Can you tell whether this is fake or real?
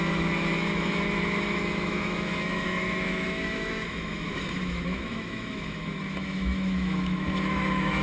fake